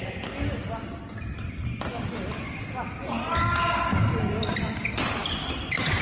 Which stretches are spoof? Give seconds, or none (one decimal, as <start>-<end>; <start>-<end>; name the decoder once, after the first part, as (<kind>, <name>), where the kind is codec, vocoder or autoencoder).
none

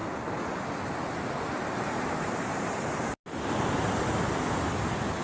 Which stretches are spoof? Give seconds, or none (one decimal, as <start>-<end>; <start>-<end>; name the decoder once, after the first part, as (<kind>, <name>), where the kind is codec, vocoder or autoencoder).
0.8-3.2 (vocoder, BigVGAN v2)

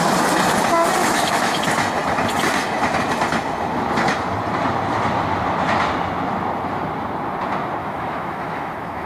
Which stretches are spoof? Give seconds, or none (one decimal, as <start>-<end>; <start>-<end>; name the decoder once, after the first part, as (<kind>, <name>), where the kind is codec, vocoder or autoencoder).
1.0-1.6 (autoencoder, DAC-VAE); 7.8-9.1

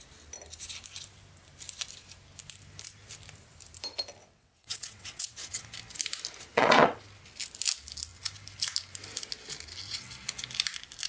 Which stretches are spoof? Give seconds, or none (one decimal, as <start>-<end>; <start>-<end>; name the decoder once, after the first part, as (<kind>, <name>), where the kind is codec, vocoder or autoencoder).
4.2-5.6 (vocoder, WaveNeXt); 6.5-7.0